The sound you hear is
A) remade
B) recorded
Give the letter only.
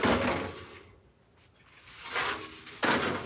B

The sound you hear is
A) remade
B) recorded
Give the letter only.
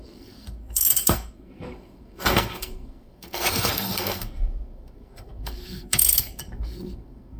A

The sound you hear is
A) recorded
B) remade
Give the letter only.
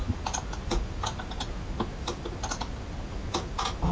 A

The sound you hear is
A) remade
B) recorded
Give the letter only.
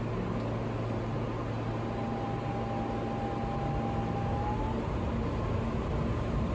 B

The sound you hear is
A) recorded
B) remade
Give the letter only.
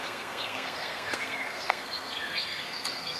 B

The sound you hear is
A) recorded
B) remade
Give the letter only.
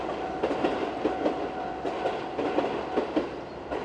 A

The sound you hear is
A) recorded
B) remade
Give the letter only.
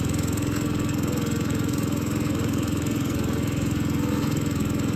B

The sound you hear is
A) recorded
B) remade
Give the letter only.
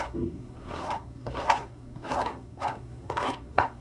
B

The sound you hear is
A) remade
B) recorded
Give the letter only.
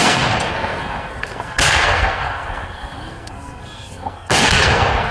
A